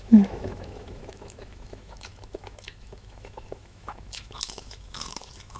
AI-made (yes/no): yes